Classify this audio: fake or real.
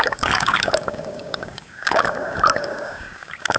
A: fake